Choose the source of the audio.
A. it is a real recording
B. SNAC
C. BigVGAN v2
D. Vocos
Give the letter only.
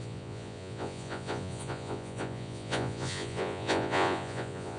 D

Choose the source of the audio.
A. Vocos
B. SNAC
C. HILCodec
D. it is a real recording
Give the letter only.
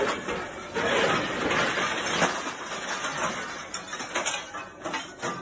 D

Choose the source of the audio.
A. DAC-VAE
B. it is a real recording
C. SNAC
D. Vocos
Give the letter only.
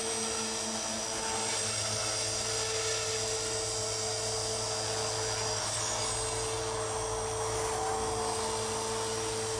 B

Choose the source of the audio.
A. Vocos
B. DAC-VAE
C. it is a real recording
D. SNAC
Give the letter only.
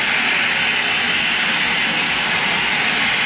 C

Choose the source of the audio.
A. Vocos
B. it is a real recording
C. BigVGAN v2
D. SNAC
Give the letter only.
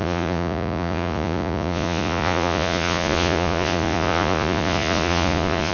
A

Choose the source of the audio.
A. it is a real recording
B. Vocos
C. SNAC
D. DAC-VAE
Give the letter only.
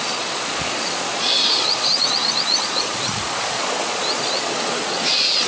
B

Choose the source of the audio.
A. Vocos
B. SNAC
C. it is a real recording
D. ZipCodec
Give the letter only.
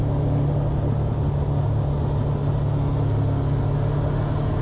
C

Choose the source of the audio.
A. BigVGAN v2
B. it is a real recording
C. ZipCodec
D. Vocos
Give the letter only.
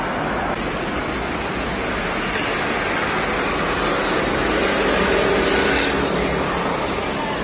B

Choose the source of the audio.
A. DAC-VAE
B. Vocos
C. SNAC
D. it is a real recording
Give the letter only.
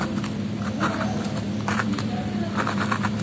D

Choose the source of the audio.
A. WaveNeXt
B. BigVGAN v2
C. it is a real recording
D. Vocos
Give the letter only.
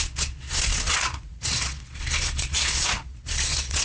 D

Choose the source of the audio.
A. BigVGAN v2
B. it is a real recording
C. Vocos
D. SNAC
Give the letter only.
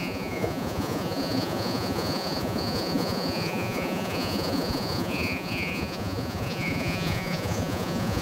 C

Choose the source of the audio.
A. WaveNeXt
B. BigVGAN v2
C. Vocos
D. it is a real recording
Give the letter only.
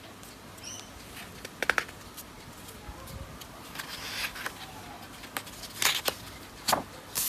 D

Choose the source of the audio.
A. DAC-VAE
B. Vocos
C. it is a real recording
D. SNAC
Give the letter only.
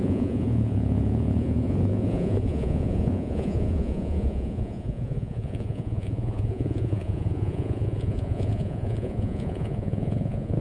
B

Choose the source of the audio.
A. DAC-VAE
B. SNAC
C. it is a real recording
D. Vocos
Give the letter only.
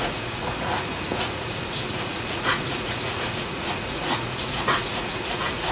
D